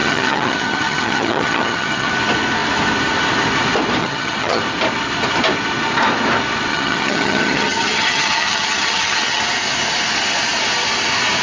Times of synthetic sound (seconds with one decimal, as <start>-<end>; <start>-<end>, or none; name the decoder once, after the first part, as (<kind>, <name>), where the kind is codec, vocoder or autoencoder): 0.0-2.1 (vocoder, HiFi-GAN); 4.0-4.6; 6.7-9.4